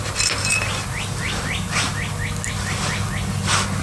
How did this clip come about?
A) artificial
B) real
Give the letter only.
B